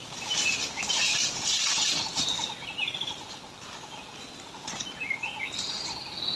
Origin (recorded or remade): recorded